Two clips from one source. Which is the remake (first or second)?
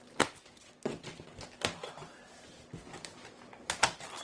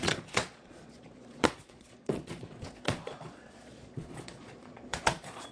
second